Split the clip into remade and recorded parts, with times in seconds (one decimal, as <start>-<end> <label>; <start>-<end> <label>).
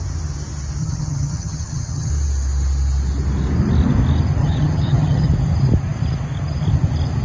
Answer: 0.0-0.8 recorded; 0.8-2.1 remade; 2.1-4.4 recorded; 4.4-5.3 remade; 5.3-7.2 recorded